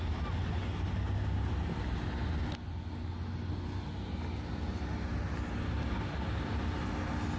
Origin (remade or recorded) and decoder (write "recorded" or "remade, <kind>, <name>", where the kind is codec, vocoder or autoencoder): recorded